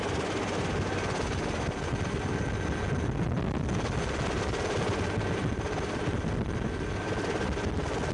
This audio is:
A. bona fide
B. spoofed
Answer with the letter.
A